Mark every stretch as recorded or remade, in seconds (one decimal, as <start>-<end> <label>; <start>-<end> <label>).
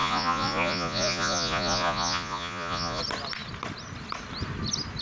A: 0.0-3.0 remade; 3.0-5.0 recorded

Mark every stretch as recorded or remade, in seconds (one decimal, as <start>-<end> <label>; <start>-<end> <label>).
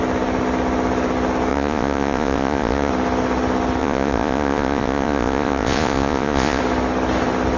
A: 0.0-1.5 recorded; 1.5-2.9 remade; 2.9-3.8 recorded; 3.8-6.6 remade; 6.6-7.6 recorded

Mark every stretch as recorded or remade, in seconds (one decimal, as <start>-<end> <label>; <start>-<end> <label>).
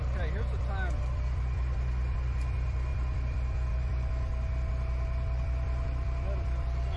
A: 0.0-7.0 recorded